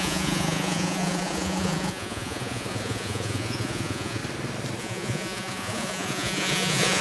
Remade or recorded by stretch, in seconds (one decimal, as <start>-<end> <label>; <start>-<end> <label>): 0.0-4.2 remade; 4.2-4.8 recorded; 4.8-7.0 remade